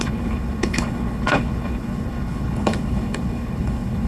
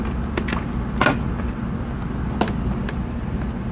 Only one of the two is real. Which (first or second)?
second